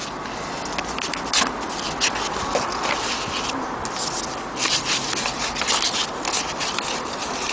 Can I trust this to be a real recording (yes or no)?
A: yes